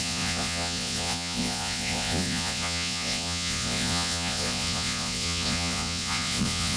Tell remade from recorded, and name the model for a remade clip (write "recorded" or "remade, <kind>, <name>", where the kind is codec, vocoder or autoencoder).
remade, vocoder, Vocos